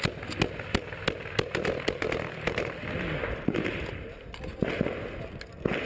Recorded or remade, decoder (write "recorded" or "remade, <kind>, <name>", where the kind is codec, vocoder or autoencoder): recorded